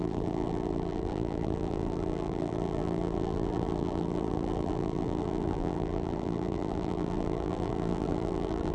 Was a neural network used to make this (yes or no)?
yes